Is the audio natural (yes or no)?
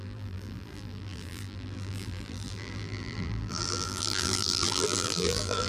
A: no